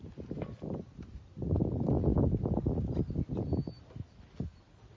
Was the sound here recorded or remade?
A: recorded